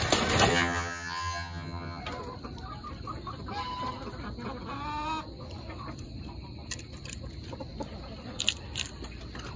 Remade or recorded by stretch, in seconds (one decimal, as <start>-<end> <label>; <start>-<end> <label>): 0.0-0.5 recorded; 0.5-2.0 remade; 2.0-9.6 recorded